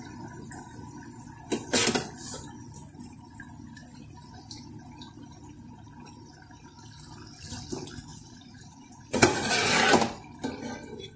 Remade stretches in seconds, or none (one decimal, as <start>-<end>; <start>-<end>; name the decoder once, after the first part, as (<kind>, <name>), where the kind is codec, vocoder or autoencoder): 8.1-9.5 (vocoder, Vocos)

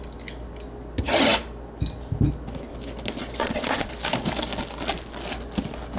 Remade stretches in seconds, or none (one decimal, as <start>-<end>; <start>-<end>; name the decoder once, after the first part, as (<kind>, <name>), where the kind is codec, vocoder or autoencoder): 3.4-3.9 (vocoder, Vocos)

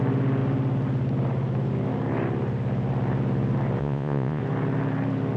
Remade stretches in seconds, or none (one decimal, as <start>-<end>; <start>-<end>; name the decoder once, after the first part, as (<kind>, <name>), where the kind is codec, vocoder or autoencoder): 3.8-4.4 (vocoder, Vocos)

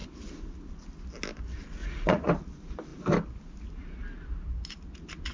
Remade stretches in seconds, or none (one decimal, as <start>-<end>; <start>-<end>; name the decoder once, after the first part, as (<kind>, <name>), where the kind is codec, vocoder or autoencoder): 1.8-2.3 (vocoder, Vocos)